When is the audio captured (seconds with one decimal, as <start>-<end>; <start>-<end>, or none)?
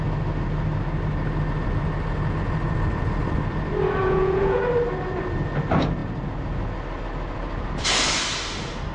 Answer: 0.0-4.0; 4.6-8.9